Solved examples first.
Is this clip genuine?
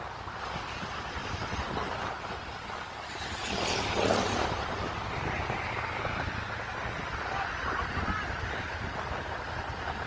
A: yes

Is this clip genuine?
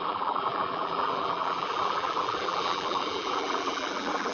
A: no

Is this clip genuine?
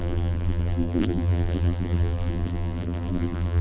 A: no